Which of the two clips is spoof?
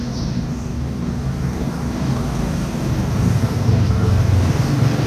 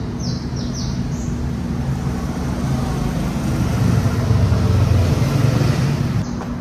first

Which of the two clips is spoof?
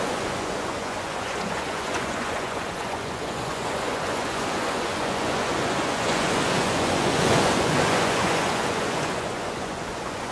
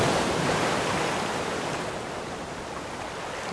first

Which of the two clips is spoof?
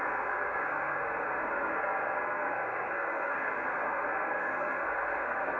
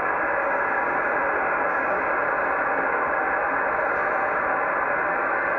first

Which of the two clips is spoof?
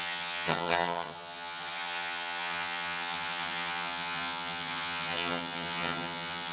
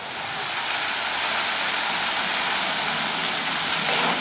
first